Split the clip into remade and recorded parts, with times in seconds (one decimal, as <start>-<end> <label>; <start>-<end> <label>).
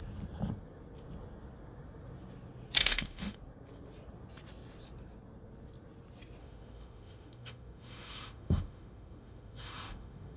0.0-2.8 recorded; 2.8-3.4 remade; 3.4-6.4 recorded; 6.4-10.4 remade